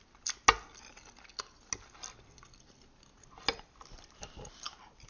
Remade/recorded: recorded